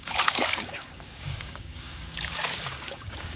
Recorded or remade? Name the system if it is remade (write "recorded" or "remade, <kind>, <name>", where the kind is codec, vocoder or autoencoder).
remade, codec, DAC